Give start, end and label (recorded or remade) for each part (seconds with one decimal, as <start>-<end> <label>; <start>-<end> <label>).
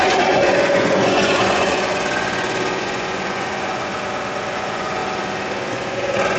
0.0-3.9 remade; 3.9-4.5 recorded; 4.5-5.0 remade; 5.0-5.7 recorded; 5.7-6.4 remade